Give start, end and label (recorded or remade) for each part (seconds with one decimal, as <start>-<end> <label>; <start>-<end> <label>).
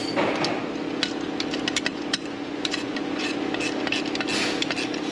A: 0.0-1.9 recorded; 1.9-3.4 remade; 3.4-5.1 recorded